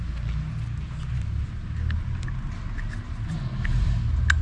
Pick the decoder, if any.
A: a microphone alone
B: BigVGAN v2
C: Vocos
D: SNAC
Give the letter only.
A